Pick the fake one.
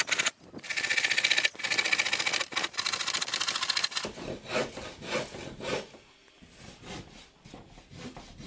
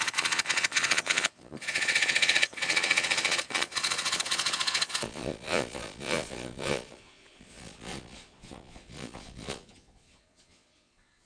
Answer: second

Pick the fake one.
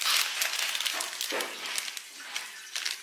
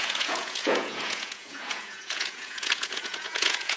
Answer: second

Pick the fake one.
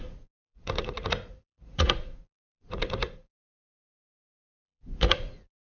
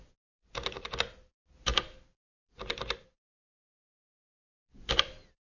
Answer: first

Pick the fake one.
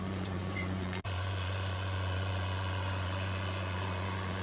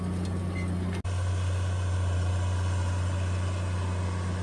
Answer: first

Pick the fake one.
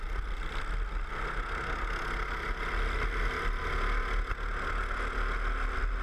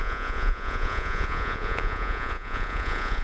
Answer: second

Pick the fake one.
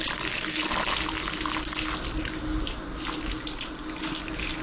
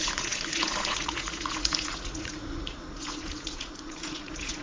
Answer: second